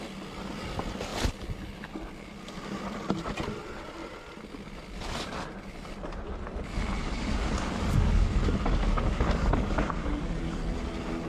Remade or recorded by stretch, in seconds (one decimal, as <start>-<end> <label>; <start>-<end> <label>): 0.0-7.0 recorded; 7.0-10.6 remade; 10.6-11.3 recorded